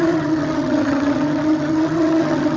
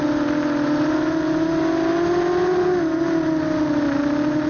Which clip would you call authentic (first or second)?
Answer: second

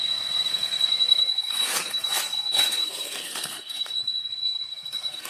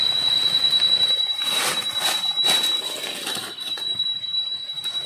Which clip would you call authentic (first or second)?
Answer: second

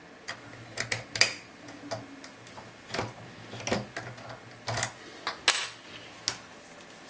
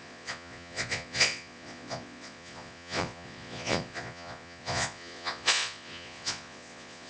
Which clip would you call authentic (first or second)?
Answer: first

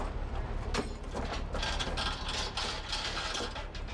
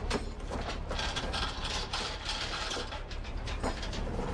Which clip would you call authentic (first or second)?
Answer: first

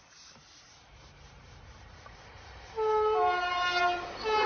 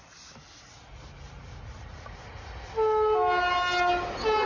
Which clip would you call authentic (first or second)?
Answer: second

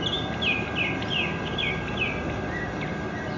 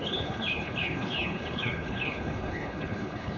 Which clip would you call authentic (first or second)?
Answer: first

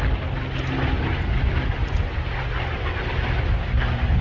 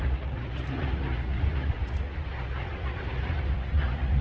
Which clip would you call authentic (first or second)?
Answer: first